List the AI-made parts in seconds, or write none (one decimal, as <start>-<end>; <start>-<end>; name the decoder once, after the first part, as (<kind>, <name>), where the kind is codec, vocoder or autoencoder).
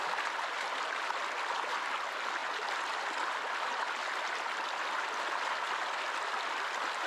none